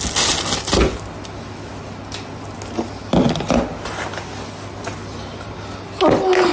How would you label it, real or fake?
real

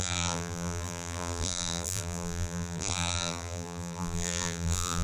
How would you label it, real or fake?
fake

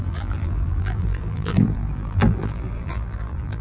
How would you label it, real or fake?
fake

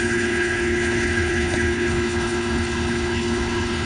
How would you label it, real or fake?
fake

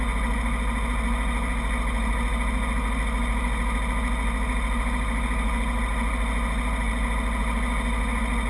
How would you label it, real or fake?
real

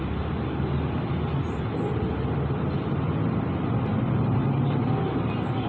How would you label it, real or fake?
real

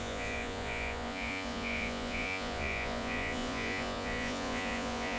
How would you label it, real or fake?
fake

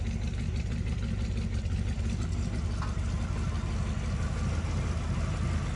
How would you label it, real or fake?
real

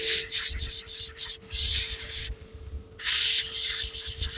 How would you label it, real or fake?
real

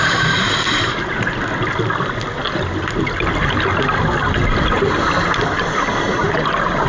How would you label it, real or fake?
real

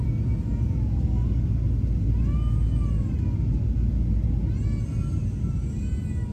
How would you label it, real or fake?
real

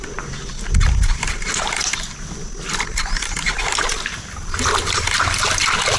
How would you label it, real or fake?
real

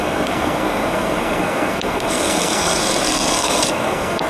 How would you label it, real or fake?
fake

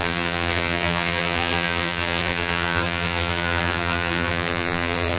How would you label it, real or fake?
fake